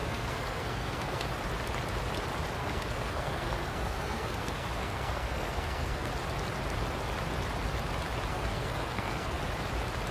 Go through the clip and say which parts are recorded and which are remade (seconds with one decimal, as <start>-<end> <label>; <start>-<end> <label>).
0.0-1.3 remade; 1.3-2.6 recorded; 2.6-6.1 remade; 6.1-8.3 recorded; 8.3-9.4 remade; 9.4-10.1 recorded